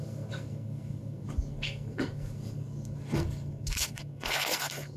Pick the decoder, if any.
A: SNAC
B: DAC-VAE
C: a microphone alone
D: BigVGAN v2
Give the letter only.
A